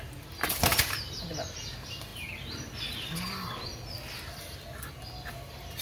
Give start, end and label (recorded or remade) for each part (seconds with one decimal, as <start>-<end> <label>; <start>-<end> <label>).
0.0-5.8 recorded